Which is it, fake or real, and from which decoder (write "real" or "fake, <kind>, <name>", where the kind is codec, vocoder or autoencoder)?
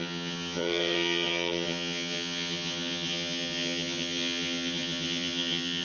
fake, vocoder, HiFi-GAN